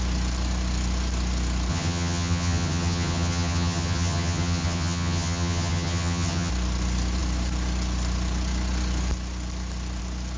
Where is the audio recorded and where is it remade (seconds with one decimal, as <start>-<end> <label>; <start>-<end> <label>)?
0.0-1.7 recorded; 1.7-6.5 remade; 6.5-10.4 recorded